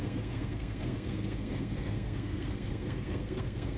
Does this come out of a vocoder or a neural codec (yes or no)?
yes